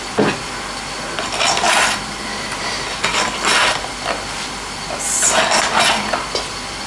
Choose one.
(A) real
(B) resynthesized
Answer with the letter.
A